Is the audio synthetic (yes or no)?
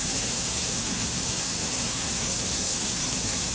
yes